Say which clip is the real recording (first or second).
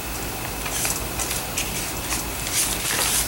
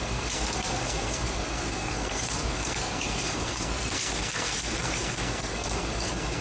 first